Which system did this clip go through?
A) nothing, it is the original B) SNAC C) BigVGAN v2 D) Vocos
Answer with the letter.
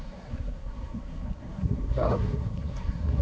B